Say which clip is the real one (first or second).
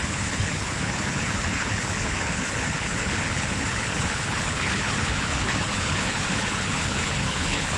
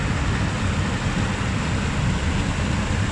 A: second